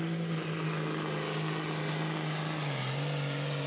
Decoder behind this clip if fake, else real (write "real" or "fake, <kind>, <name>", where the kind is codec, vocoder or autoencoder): real